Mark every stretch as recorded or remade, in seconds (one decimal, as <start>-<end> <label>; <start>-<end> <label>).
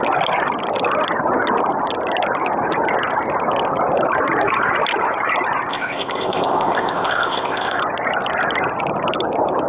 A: 0.0-5.7 recorded; 5.7-7.8 remade; 7.8-9.7 recorded